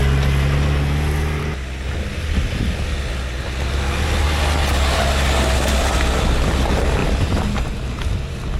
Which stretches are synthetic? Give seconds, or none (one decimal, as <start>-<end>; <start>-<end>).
none

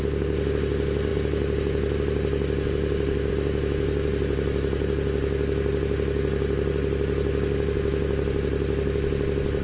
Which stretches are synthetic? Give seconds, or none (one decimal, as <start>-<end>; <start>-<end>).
none

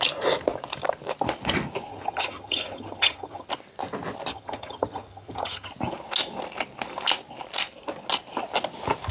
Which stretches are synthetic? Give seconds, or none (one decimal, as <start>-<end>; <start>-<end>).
1.9-3.5; 4.3-5.7